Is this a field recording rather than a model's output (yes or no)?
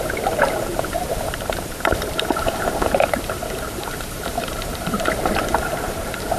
no